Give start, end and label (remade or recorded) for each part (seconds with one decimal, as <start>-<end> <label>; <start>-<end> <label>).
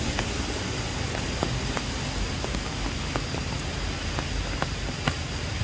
0.0-5.6 recorded